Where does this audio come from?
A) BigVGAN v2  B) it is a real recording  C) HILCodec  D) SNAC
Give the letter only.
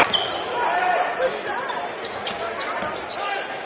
B